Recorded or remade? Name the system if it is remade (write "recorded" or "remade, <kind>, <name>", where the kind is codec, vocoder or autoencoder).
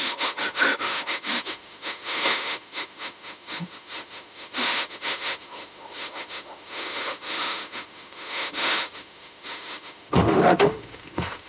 remade, autoencoder, DAC-VAE